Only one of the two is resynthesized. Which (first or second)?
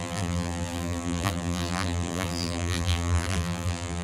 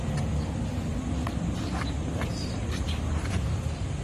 first